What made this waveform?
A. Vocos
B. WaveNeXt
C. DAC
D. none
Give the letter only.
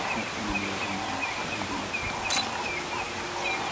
D